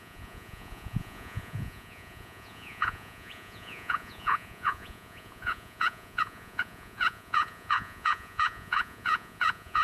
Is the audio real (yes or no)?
no